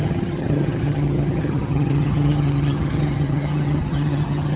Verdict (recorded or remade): remade